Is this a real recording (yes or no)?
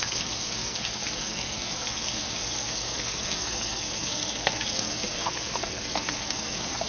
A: no